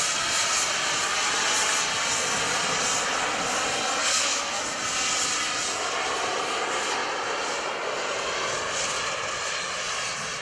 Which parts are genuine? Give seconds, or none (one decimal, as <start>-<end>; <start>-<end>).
0.0-4.0; 4.6-10.4